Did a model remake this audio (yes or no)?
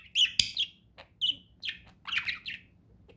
no